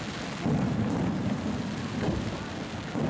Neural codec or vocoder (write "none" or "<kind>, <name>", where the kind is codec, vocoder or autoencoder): none